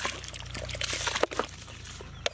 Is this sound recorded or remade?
recorded